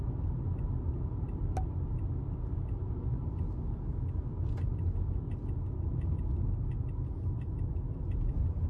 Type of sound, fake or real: real